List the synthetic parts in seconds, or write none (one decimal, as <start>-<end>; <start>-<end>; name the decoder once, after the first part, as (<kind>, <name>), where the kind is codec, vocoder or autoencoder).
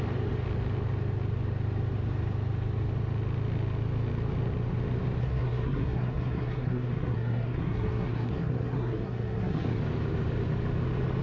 5.2-9.8 (codec, SNAC)